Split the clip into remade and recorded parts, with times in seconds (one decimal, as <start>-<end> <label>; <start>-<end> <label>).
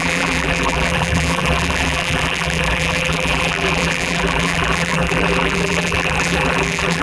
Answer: 0.0-7.0 remade